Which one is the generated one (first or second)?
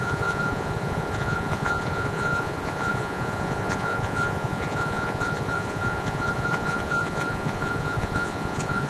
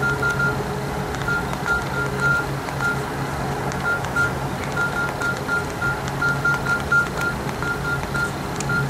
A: first